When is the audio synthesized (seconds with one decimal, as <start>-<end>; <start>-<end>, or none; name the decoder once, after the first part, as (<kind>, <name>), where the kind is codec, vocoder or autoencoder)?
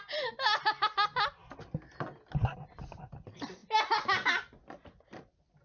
none